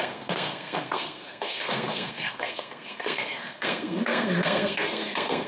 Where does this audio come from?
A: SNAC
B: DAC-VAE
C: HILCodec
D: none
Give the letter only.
A